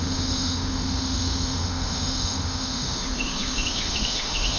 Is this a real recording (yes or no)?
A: no